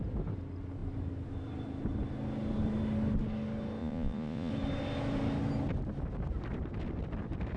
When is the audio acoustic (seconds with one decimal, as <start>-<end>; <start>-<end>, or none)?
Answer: 0.0-3.8; 4.5-7.6